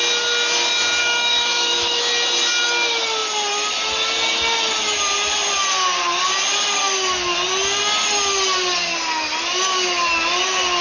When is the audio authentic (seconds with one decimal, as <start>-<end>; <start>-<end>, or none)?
0.0-1.0; 2.0-10.8